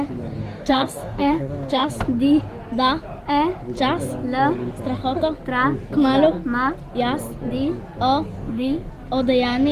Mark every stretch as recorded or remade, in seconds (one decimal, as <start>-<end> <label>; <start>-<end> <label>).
0.0-0.4 recorded; 0.4-1.9 remade; 1.9-8.3 recorded; 8.3-8.9 remade; 8.9-9.7 recorded